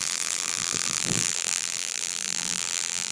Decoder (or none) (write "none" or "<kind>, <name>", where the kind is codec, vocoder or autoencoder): vocoder, BigVGAN v2